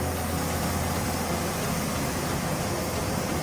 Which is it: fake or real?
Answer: real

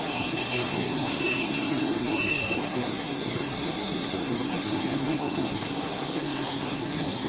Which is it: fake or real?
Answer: fake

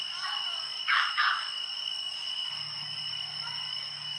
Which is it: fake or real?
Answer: fake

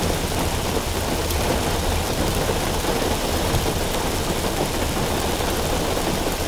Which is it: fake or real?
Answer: real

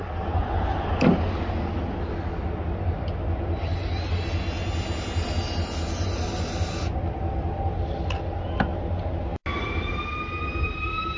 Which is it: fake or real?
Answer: real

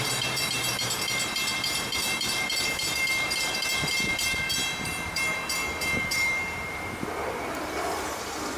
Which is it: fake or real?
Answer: fake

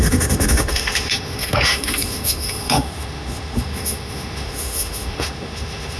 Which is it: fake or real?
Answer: fake